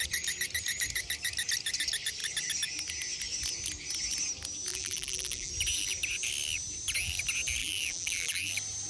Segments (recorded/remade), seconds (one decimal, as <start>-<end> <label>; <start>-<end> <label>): 0.0-4.7 recorded; 4.7-5.5 remade; 5.5-7.6 recorded; 7.6-8.5 remade; 8.5-8.9 recorded